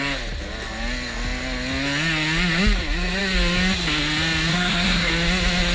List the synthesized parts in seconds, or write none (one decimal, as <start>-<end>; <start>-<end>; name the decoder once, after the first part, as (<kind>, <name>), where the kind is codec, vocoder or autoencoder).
4.5-5.1 (codec, SNAC)